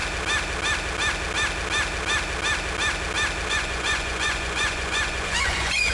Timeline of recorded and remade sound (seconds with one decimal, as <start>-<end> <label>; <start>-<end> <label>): 0.0-3.5 recorded; 3.5-5.9 remade